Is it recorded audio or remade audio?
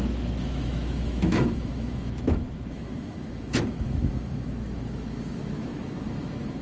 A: remade